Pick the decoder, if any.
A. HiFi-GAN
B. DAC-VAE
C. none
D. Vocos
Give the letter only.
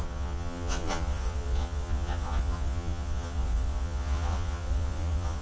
D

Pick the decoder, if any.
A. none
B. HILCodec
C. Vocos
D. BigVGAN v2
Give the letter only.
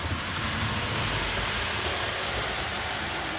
A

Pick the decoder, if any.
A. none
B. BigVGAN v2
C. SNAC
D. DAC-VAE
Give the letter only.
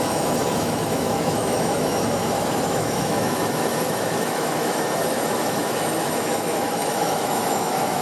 D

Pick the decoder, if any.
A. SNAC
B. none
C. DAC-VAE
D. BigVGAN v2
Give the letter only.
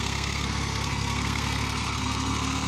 A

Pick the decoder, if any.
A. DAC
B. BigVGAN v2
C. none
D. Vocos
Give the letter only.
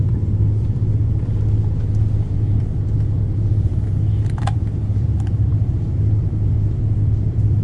B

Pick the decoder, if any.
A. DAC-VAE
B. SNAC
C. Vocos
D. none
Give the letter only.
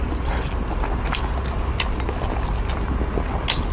D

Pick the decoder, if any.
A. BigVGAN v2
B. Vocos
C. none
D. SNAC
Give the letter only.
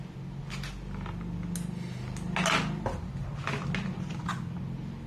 C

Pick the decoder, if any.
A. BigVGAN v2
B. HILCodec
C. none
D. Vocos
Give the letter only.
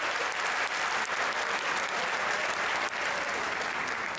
A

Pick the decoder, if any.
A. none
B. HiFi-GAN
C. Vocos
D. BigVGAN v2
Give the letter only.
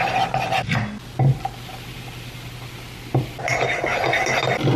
A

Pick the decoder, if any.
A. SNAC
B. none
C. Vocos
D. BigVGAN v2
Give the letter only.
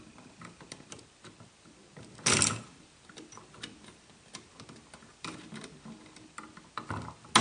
B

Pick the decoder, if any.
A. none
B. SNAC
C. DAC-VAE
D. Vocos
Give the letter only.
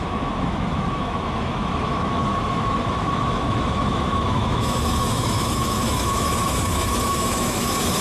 C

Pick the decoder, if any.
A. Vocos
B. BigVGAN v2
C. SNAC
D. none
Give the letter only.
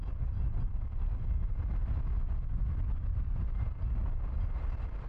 D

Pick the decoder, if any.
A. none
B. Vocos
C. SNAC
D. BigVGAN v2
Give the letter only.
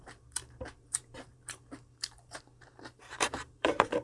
D